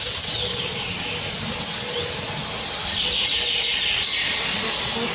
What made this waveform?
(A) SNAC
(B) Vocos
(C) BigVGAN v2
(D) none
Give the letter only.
D